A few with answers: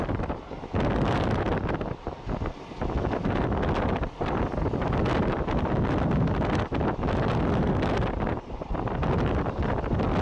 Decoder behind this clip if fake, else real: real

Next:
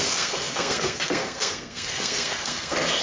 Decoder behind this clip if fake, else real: fake, codec, SNAC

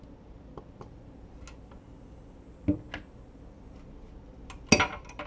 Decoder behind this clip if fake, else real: real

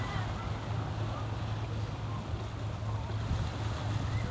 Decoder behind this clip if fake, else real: real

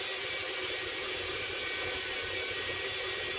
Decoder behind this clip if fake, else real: real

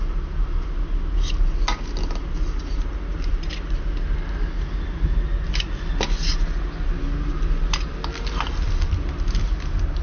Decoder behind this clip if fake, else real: real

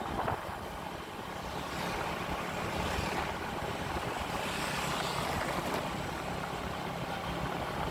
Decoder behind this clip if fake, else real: real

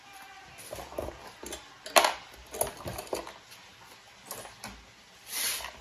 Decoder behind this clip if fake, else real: real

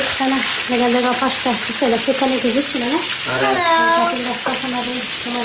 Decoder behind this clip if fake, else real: real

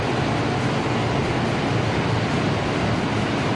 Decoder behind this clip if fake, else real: real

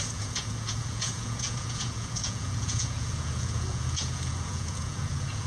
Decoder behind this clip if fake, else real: fake, vocoder, Vocos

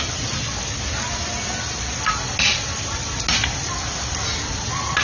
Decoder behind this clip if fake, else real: real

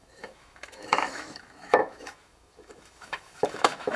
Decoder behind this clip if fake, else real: fake, autoencoder, DAC-VAE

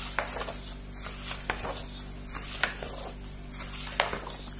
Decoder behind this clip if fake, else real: real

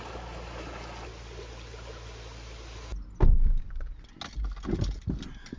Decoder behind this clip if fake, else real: real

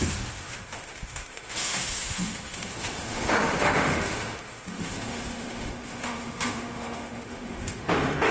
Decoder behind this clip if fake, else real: fake, autoencoder, DAC-VAE